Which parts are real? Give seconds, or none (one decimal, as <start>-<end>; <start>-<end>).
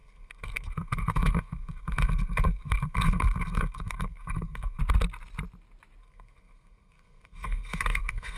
4.8-6.0